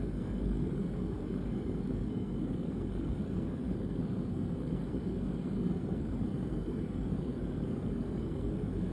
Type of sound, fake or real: fake